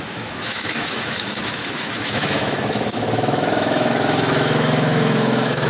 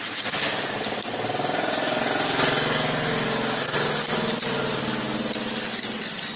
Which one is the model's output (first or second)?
first